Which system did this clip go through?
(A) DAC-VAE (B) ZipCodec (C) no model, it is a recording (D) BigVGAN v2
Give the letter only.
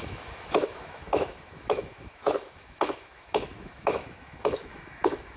A